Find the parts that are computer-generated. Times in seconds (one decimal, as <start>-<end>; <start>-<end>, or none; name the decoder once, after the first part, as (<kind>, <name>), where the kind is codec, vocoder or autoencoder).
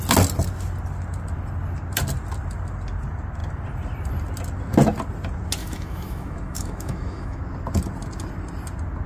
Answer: 5.6-7.4 (autoencoder, DAC-VAE)